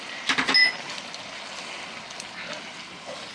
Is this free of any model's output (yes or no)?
yes